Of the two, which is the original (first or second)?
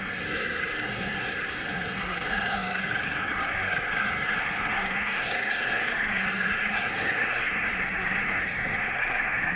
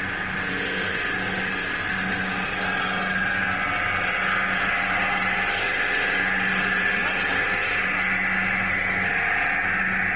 second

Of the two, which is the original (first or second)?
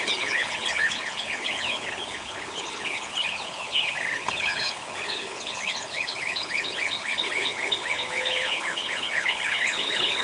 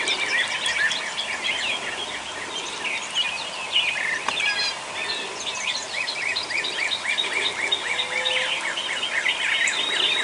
second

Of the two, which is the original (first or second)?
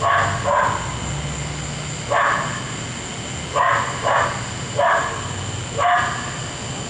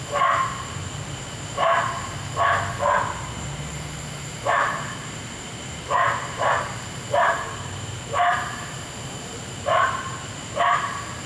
first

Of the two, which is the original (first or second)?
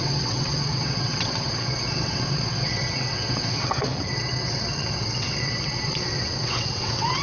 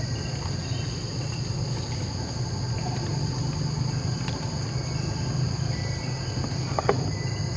second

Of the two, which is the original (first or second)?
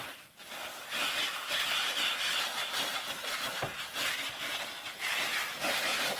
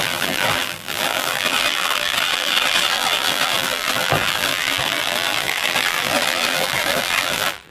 first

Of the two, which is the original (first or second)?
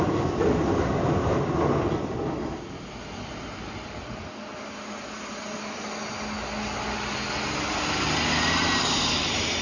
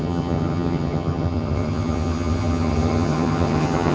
first